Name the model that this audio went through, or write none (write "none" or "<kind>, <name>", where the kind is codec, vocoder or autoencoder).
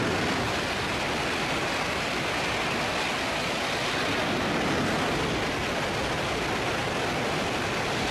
none